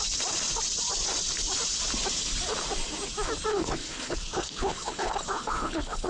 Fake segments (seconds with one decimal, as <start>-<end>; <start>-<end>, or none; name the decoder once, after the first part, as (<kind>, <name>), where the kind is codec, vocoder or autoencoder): 3.5-6.1 (codec, HILCodec)